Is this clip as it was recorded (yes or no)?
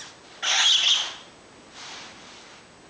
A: yes